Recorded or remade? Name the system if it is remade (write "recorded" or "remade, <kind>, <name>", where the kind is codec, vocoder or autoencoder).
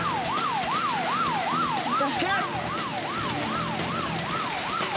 recorded